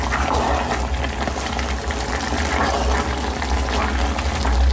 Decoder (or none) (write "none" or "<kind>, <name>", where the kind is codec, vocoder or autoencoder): none